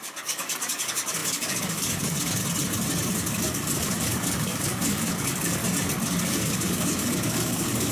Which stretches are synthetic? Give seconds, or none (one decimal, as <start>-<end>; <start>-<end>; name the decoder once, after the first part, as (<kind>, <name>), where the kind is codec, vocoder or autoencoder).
0.0-2.4 (codec, DAC); 3.2-5.6; 6.2-7.9